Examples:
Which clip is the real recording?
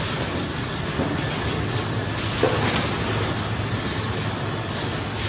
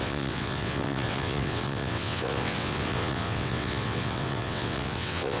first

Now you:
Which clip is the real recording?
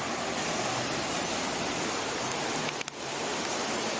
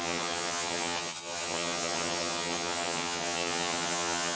first